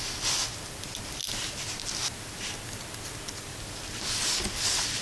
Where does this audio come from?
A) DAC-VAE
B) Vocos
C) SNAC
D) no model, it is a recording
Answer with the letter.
D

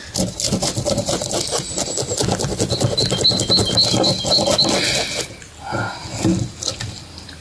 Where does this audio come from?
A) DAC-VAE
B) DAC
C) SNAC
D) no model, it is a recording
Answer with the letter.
D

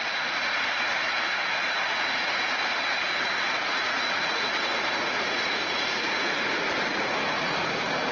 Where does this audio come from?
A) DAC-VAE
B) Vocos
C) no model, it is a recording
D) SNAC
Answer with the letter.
B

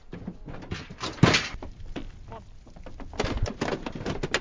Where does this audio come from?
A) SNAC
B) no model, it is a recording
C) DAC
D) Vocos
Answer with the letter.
B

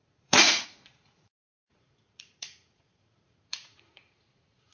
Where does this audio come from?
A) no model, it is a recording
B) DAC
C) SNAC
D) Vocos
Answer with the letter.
D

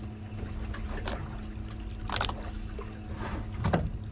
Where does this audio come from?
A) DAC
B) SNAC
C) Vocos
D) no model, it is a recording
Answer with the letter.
D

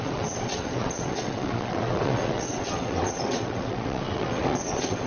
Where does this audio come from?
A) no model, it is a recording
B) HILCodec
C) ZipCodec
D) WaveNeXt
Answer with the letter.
D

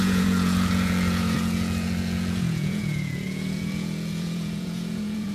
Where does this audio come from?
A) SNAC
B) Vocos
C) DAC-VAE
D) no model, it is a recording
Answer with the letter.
B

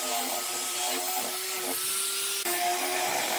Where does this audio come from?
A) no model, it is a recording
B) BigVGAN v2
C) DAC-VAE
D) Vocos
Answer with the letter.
A